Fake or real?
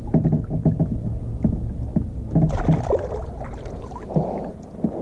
real